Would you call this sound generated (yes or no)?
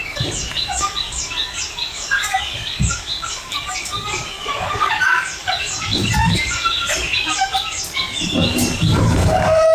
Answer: yes